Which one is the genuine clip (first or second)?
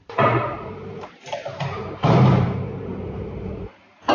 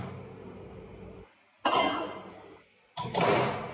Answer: second